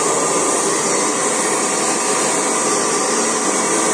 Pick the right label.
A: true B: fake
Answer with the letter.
A